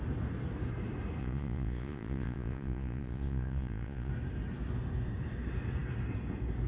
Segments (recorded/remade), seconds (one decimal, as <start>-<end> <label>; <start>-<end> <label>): 0.0-1.2 recorded; 1.2-4.1 remade; 4.1-6.7 recorded

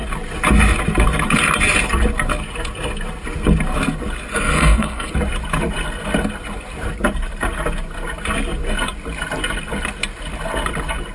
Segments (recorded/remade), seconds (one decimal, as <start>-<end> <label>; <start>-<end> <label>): 0.0-4.3 recorded; 4.3-5.1 remade; 5.1-11.1 recorded